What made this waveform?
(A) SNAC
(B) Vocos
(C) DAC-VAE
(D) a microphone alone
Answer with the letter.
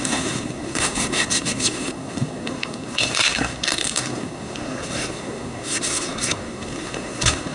A